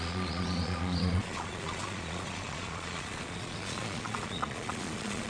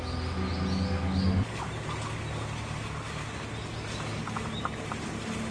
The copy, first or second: first